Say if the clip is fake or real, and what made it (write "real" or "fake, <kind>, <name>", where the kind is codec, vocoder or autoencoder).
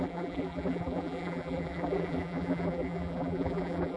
fake, vocoder, BigVGAN v2